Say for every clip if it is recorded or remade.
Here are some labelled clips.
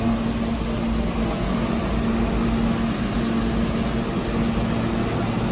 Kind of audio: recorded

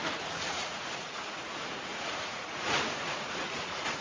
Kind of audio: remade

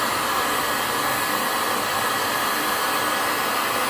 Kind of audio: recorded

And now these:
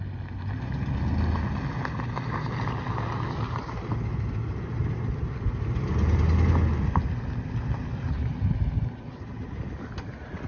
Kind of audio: recorded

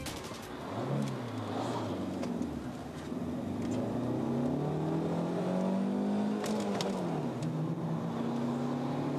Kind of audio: recorded